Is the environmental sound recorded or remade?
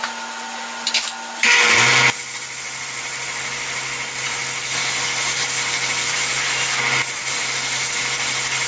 recorded